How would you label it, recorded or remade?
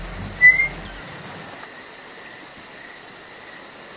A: recorded